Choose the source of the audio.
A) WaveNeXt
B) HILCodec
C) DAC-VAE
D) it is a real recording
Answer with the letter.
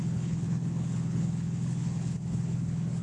B